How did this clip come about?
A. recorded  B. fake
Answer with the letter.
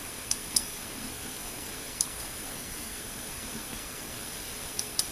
B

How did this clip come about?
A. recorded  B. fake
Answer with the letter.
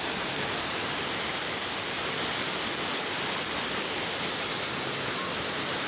A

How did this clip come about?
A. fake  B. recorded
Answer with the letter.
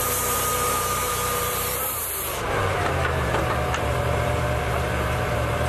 A